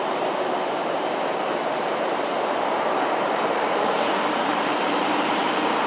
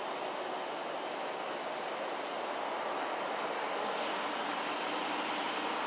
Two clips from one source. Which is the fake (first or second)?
first